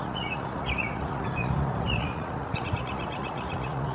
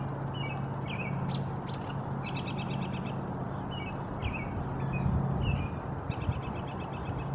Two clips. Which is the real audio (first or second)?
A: second